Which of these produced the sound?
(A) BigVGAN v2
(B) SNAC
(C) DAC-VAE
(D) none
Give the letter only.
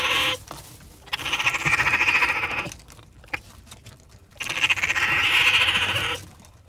D